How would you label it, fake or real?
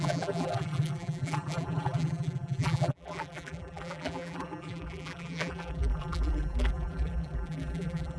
fake